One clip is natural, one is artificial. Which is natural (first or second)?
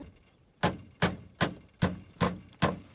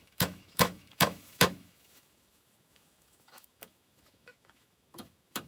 first